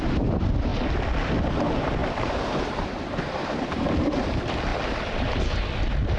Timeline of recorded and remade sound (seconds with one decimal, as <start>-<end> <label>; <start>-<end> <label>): 0.0-2.0 recorded; 2.0-4.3 remade; 4.3-6.2 recorded